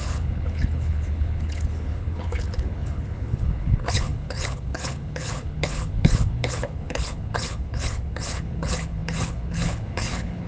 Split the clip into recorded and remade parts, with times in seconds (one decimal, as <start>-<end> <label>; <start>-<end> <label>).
0.0-10.5 remade

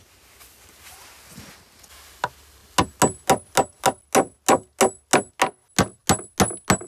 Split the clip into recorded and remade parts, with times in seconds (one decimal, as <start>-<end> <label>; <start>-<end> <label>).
0.0-6.9 recorded